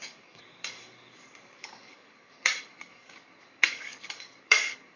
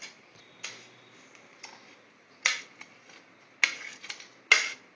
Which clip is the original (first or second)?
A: second